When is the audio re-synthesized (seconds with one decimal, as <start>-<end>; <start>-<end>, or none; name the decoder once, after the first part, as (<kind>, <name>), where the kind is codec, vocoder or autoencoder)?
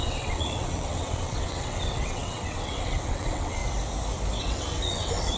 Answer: 0.0-3.6 (vocoder, WaveNeXt); 4.4-5.4